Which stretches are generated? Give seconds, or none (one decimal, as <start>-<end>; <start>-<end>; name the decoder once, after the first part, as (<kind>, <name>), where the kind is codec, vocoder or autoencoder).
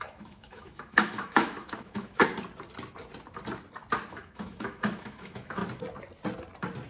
0.0-2.2 (autoencoder, DAC-VAE); 4.1-5.6